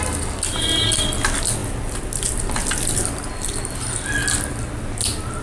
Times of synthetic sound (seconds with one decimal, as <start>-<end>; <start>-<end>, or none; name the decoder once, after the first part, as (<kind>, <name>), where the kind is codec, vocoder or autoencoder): none